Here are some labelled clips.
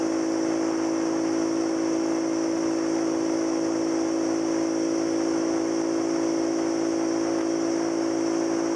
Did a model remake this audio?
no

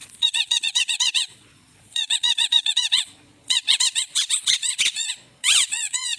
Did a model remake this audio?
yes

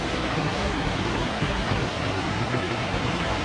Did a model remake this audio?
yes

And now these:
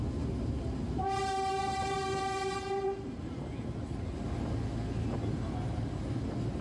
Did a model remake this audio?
no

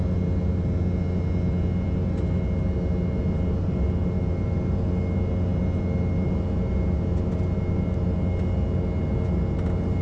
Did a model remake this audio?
no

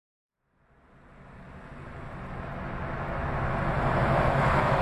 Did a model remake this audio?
no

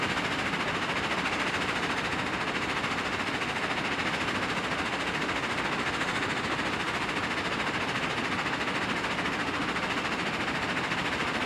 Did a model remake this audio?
no